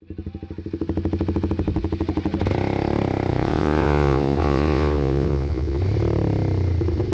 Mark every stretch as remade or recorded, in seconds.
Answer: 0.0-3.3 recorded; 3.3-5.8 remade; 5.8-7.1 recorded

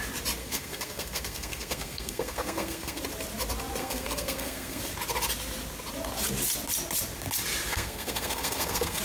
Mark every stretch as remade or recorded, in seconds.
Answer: 0.0-0.4 recorded; 0.4-3.0 remade; 3.0-3.8 recorded; 3.8-4.8 remade; 4.8-7.7 recorded; 7.7-9.0 remade

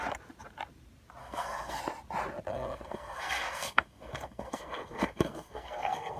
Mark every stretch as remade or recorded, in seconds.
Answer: 0.0-1.2 recorded; 1.2-1.8 remade; 1.8-2.5 recorded; 2.5-6.2 remade